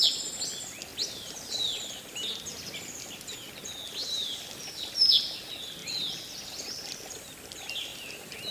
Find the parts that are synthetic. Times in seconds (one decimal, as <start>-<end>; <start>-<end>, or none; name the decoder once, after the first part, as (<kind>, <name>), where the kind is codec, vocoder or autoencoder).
none